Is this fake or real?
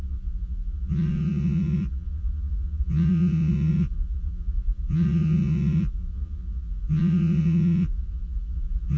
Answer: fake